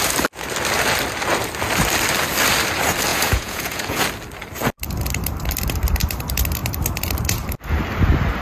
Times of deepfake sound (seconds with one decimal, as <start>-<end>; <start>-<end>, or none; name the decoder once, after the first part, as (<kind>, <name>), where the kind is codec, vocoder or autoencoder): 3.1-4.0 (vocoder, Vocos)